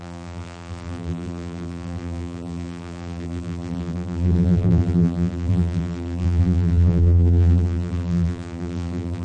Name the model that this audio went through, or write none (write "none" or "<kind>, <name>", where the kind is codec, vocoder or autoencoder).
vocoder, BigVGAN v2